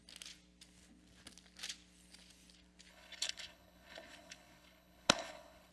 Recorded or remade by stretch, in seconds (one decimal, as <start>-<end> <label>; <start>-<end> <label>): 0.0-2.9 recorded; 2.9-5.7 remade